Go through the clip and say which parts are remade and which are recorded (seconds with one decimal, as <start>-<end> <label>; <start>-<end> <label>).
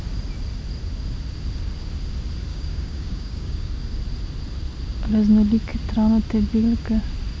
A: 0.0-2.5 recorded; 2.5-3.7 remade; 3.7-7.4 recorded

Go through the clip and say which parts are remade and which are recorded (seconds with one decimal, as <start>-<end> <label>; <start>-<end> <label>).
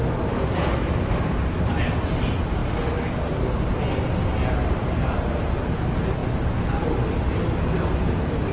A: 0.0-8.5 recorded